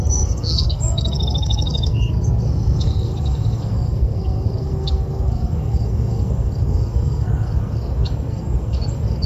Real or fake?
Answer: fake